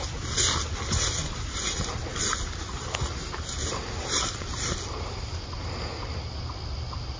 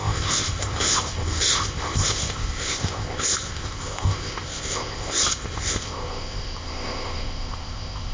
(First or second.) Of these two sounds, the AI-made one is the second